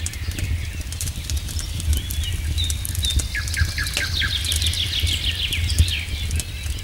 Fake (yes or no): no